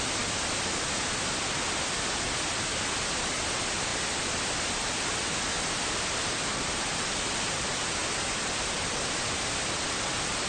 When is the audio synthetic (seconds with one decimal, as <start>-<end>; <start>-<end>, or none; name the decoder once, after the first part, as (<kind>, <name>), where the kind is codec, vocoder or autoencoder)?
none